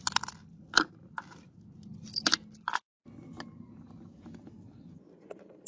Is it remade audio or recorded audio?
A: recorded